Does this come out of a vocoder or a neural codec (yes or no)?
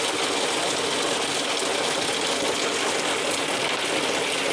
no